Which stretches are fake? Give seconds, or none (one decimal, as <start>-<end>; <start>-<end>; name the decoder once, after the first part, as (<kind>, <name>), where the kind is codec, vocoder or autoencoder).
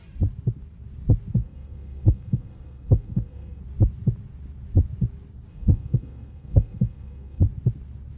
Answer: 1.4-3.6 (codec, SNAC); 5.5-7.4